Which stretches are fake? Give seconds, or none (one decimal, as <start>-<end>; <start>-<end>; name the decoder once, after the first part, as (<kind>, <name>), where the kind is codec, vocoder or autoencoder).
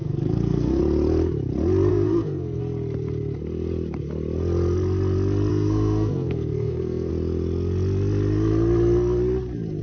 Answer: 0.0-0.8 (codec, SNAC); 1.9-2.6; 5.5-7.1